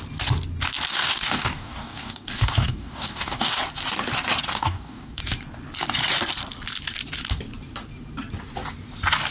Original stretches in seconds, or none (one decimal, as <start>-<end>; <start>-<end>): 0.0-0.9; 3.5-4.5; 5.2-9.3